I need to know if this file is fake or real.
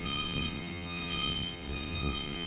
fake